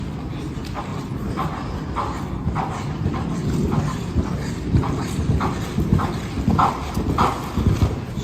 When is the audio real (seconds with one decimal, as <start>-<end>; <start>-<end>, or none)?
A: 0.0-8.2